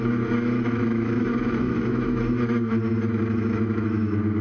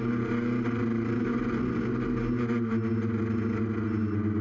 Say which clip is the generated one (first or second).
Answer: first